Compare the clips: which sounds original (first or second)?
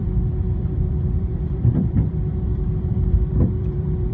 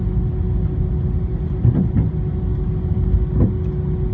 second